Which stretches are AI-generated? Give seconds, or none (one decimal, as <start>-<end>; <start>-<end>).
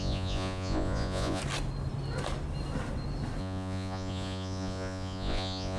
0.0-1.4; 3.4-5.8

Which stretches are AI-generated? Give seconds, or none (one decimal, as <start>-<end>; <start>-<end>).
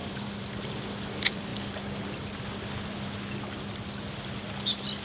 0.0-1.5; 4.5-5.0